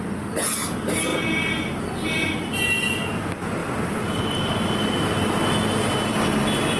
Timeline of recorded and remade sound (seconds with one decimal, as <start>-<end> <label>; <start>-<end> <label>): 0.0-1.1 recorded; 1.1-1.8 remade; 1.8-3.6 recorded; 3.6-5.1 remade; 5.1-6.8 recorded